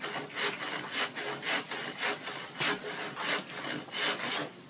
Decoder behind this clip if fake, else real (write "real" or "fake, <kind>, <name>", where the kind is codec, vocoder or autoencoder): real